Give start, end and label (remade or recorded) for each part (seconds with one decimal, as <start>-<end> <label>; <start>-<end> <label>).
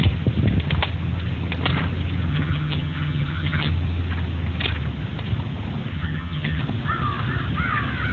0.0-2.3 recorded; 2.3-3.7 remade; 3.7-5.9 recorded; 5.9-6.6 remade; 6.6-8.1 recorded